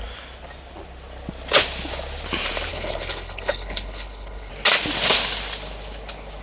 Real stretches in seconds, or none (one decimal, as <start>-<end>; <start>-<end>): 0.0-2.7; 4.5-6.4